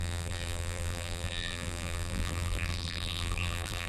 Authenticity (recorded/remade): remade